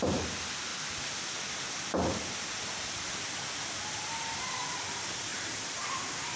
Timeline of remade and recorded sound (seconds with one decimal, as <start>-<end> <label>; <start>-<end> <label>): 0.0-5.3 recorded; 5.3-6.4 remade